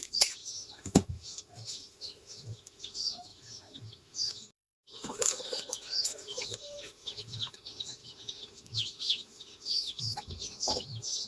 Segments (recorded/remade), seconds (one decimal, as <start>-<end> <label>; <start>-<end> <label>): 0.0-11.3 remade